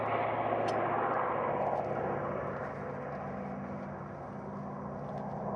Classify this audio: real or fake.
real